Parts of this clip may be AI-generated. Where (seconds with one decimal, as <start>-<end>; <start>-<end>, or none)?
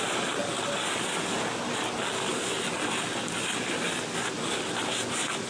none